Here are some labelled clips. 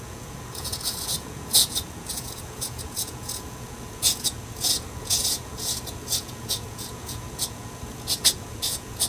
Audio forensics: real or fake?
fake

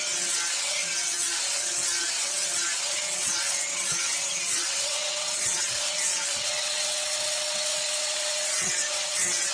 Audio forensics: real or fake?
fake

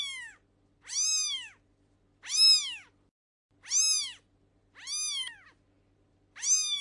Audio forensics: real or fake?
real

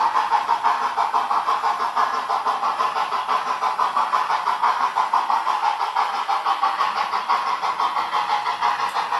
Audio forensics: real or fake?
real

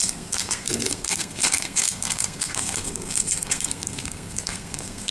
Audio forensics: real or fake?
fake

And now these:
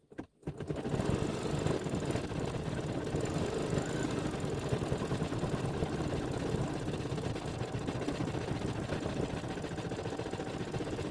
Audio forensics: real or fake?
real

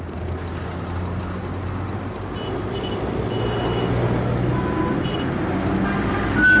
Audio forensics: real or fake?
real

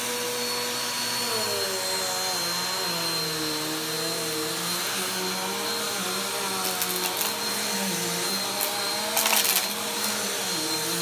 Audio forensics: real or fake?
real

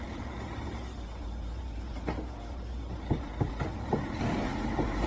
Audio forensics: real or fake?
real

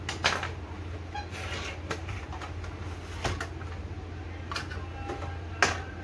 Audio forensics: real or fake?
real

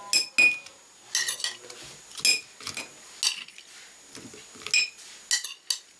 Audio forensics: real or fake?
real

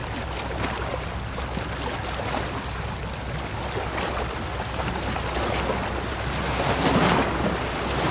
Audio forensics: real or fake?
real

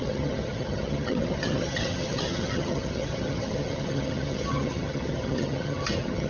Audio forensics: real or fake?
fake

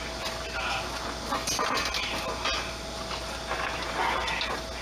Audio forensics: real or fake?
real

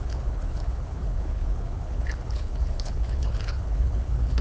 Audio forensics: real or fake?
fake